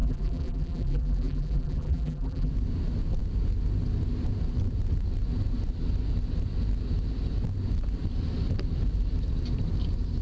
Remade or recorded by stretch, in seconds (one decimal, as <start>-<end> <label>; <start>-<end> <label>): 0.0-2.5 remade; 2.5-10.2 recorded